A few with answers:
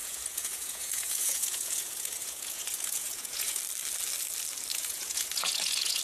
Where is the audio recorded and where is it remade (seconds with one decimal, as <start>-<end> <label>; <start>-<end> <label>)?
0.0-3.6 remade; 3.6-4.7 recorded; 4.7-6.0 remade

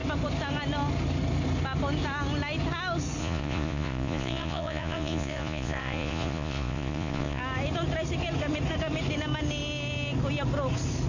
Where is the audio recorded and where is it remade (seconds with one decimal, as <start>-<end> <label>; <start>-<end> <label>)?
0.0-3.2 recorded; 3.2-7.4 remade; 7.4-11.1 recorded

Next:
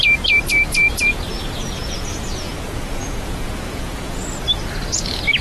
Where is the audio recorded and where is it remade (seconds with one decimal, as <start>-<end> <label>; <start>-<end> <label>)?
0.0-1.3 recorded; 1.3-4.2 remade; 4.2-5.4 recorded